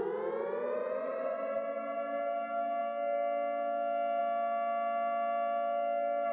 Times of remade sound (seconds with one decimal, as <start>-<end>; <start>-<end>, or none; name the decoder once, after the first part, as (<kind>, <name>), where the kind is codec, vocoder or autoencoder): 0.8-1.4 (vocoder, Vocos)